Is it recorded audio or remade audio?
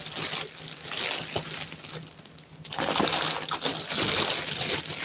recorded